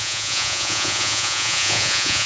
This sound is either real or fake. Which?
fake